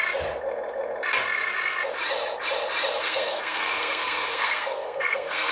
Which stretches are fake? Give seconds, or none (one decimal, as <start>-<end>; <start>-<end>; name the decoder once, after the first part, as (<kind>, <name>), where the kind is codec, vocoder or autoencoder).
3.0-5.5 (codec, SNAC)